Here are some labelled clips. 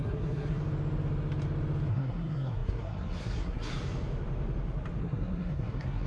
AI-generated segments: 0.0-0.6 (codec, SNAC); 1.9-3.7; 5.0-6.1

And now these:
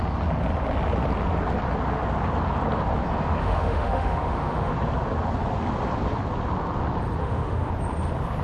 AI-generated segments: 3.4-4.7 (autoencoder, DAC-VAE); 7.2-7.7

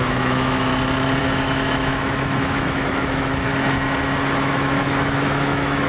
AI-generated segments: 0.0-0.7 (autoencoder, DAC-VAE); 1.2-3.5; 4.4-5.9

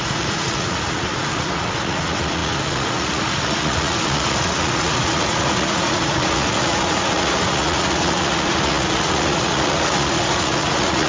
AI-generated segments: 0.0-11.1 (vocoder, Vocos)

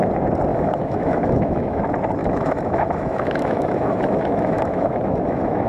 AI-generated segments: 0.5-1.8 (autoencoder, DAC-VAE); 2.2-5.7

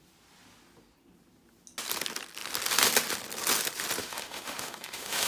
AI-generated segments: 4.0-5.3 (autoencoder, DAC-VAE)